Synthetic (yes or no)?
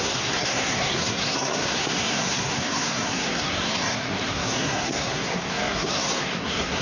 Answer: yes